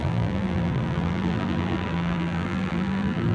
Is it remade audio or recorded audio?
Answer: remade